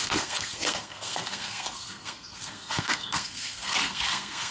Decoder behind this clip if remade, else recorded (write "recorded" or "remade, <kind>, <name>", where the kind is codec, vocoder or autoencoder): remade, codec, SNAC